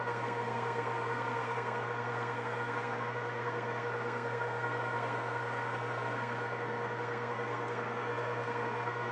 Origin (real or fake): fake